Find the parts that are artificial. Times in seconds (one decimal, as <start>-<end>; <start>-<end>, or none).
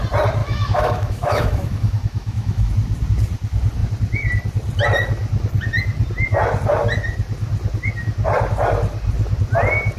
0.4-2.7